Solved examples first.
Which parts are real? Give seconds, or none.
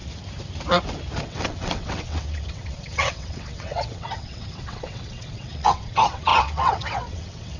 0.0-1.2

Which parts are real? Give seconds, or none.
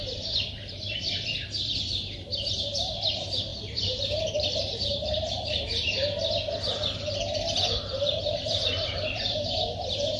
5.9-8.3